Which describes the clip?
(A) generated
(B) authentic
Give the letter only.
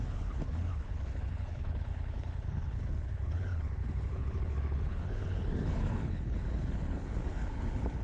A